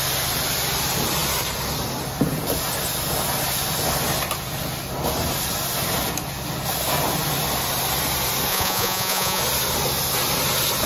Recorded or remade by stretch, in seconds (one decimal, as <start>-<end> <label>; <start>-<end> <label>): 0.0-8.5 recorded; 8.5-9.4 remade; 9.4-10.9 recorded